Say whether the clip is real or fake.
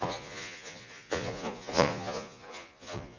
fake